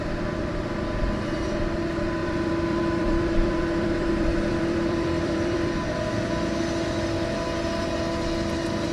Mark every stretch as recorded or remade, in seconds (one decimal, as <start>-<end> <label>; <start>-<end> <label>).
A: 0.0-2.2 recorded; 2.2-5.7 remade; 5.7-8.9 recorded